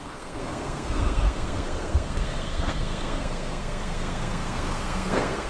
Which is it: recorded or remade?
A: remade